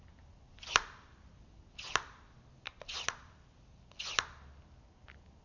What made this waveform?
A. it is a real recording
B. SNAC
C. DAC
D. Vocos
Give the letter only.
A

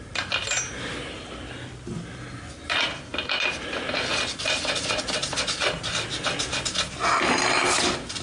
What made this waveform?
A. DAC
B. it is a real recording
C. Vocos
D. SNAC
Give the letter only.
B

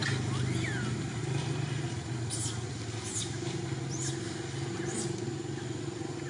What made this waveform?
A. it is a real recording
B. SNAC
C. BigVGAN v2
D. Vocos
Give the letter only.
A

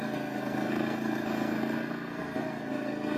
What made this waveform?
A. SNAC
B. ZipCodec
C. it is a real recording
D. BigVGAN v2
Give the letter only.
A